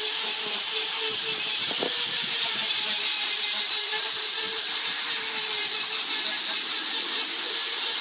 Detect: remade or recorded remade